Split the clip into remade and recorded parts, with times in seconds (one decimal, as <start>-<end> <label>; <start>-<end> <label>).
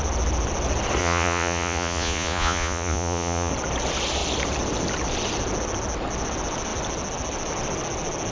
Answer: 0.0-1.0 recorded; 1.0-3.5 remade; 3.5-8.3 recorded